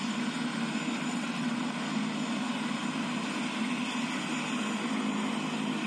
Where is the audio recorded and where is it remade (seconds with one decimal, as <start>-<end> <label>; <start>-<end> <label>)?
0.0-1.1 recorded; 1.1-1.6 remade; 1.6-5.9 recorded